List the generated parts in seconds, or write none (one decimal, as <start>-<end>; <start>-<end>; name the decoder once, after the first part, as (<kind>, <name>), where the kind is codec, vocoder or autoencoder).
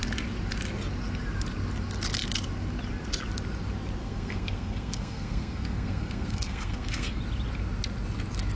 4.0-7.2 (codec, SNAC)